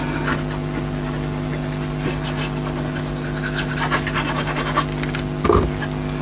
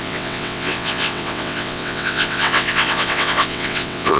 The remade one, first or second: second